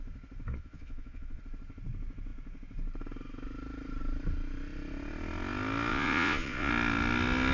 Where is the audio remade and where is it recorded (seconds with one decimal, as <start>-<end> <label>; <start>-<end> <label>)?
0.0-0.5 recorded; 0.5-1.4 remade; 1.4-5.9 recorded; 5.9-6.7 remade; 6.7-7.5 recorded